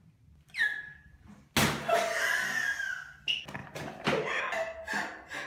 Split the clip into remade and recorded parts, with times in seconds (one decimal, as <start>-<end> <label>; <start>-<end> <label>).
0.0-3.6 recorded; 3.6-4.4 remade; 4.4-5.5 recorded